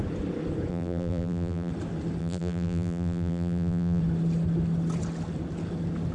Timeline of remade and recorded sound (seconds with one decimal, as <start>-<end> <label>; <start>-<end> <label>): 0.0-0.7 recorded; 0.7-1.7 remade; 1.7-2.2 recorded; 2.2-4.0 remade; 4.0-6.1 recorded